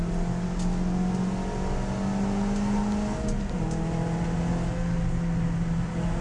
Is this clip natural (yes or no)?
yes